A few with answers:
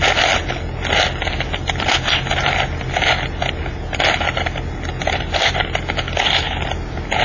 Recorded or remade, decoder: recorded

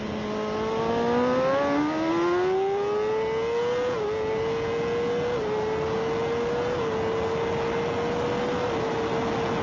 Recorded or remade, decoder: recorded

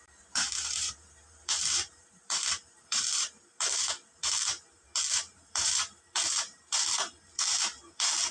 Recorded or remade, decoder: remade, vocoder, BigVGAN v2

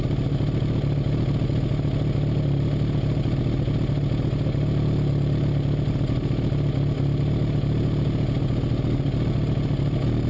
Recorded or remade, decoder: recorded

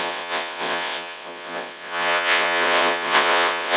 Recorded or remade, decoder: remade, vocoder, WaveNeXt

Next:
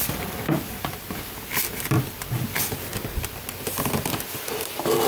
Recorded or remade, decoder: recorded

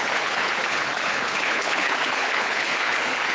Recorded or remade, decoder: remade, codec, HILCodec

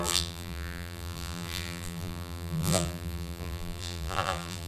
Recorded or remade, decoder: remade, vocoder, BigVGAN v2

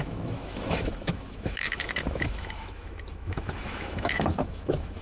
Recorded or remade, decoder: remade, autoencoder, DAC-VAE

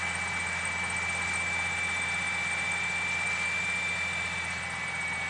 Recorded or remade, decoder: recorded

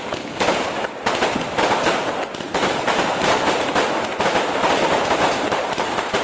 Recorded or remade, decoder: remade, vocoder, BigVGAN v2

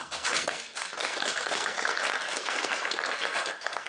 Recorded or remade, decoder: remade, codec, SNAC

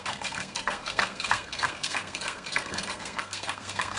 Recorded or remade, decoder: remade, codec, SNAC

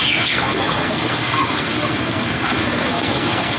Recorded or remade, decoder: remade, codec, SNAC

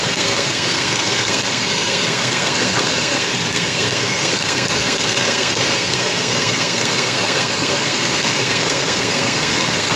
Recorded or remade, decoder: remade, codec, SNAC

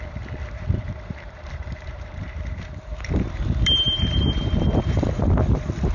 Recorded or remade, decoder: remade, vocoder, BigVGAN v2